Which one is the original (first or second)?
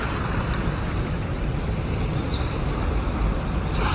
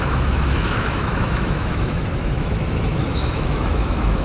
first